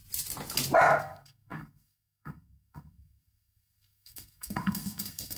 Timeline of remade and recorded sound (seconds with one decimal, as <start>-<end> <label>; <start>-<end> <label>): 0.0-1.0 recorded; 1.0-5.4 remade